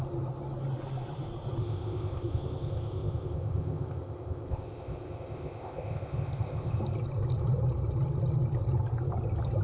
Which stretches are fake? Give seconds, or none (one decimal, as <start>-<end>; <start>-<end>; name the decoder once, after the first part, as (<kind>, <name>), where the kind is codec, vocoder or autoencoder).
1.6-6.8 (codec, ZipCodec)